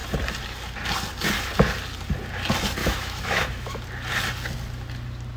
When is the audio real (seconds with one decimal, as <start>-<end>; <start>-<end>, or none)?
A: 0.0-2.8; 3.8-5.4